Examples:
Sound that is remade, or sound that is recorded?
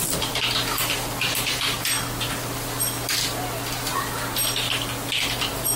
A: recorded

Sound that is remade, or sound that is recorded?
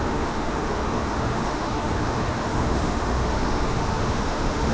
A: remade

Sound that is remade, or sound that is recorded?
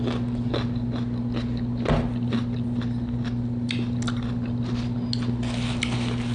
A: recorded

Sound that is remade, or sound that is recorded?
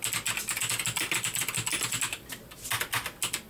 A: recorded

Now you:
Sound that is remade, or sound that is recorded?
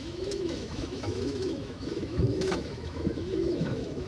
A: remade